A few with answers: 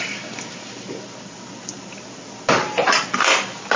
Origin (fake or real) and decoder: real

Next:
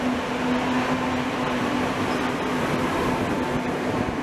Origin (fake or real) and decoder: real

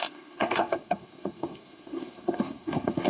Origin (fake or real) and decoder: fake, codec, SNAC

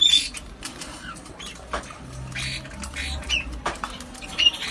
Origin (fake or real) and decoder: real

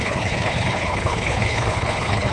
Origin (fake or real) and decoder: fake, codec, HILCodec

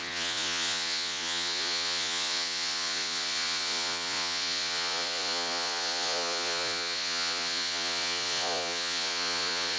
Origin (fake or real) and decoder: fake, vocoder, Vocos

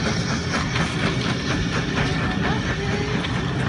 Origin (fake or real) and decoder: real